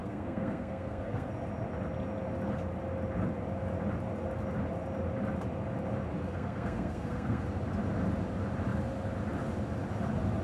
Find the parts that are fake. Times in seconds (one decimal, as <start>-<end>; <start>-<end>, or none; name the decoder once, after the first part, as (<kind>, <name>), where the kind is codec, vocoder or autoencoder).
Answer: 0.0-1.3 (codec, SNAC); 6.2-7.4